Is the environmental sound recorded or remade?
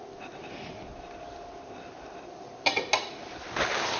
recorded